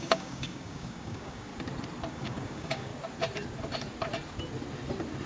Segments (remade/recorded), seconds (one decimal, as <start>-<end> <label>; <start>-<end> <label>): 0.0-1.5 remade; 1.5-2.1 recorded; 2.1-2.9 remade; 2.9-5.3 recorded